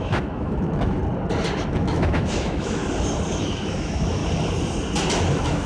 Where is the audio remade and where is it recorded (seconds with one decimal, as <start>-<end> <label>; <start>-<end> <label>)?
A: 0.0-1.0 remade; 1.0-1.7 recorded; 1.7-2.8 remade; 2.8-3.4 recorded; 3.4-4.2 remade; 4.2-5.3 recorded; 5.3-5.7 remade